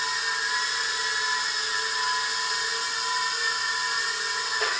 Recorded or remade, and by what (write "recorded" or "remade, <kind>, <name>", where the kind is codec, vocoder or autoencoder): recorded